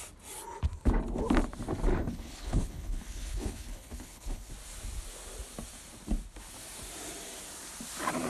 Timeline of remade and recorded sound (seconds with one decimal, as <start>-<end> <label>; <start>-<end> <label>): 0.0-1.9 recorded; 1.9-4.5 remade; 4.5-8.3 recorded